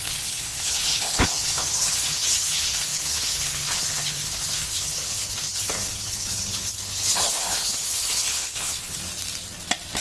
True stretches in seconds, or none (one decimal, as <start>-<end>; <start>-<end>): 9.1-10.0